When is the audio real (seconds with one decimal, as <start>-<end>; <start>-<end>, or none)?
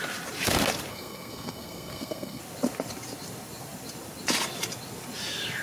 0.0-0.9; 2.4-5.6